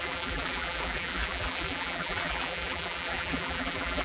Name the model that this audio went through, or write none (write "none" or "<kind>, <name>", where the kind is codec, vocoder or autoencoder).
vocoder, BigVGAN v2